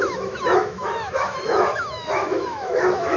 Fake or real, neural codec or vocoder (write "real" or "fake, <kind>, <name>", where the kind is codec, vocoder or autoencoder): fake, autoencoder, DAC-VAE